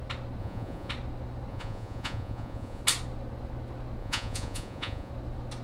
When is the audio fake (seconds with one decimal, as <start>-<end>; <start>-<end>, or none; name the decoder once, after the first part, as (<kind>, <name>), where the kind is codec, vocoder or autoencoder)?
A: 0.4-0.9 (vocoder, Vocos); 1.5-2.8; 4.0-5.1